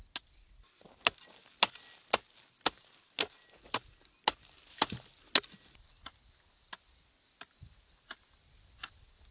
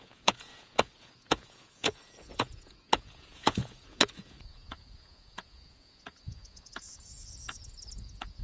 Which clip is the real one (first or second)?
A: first